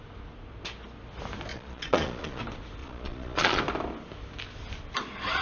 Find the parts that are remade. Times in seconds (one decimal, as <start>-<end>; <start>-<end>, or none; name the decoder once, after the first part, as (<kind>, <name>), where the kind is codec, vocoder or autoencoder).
1.5-2.4 (vocoder, Vocos); 2.8-3.6